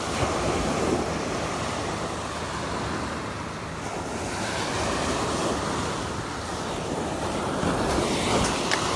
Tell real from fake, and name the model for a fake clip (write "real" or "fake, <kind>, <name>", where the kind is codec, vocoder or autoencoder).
real